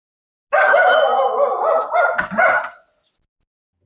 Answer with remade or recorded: recorded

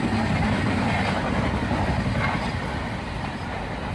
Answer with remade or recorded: recorded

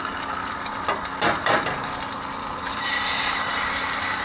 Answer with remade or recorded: recorded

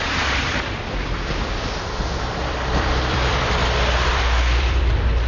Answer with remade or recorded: remade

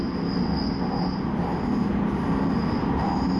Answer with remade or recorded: recorded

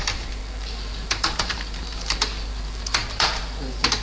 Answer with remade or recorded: remade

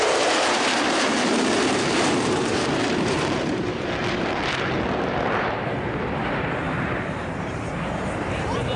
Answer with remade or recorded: remade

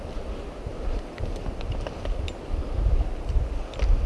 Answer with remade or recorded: recorded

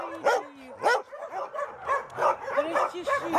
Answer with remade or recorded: recorded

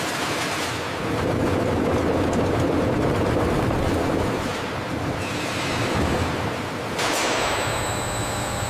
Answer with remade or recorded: recorded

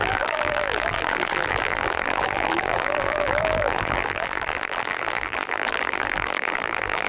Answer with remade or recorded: remade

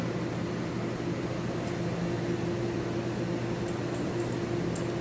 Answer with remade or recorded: recorded